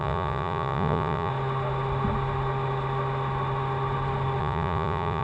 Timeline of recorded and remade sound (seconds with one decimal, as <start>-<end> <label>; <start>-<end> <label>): 0.0-1.3 remade; 1.3-4.4 recorded; 4.4-5.2 remade